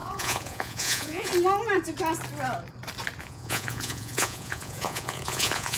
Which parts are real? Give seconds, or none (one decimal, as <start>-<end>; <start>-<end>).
1.3-3.2